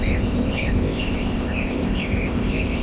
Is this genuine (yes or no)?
no